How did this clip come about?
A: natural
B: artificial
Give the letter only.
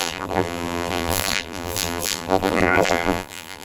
B